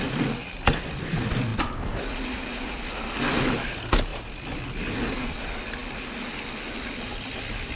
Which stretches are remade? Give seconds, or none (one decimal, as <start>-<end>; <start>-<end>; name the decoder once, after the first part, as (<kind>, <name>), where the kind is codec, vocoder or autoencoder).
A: none